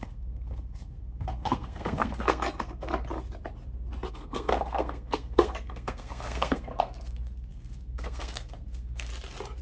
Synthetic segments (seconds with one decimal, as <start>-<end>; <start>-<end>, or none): 0.0-2.9; 4.1-9.1